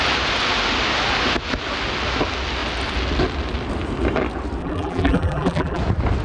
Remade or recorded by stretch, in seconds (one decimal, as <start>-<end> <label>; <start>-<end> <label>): 0.0-4.6 recorded; 4.6-5.8 remade; 5.8-6.2 recorded